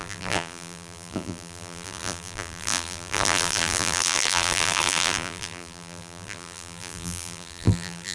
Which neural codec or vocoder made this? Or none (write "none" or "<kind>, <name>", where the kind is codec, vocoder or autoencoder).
vocoder, BigVGAN v2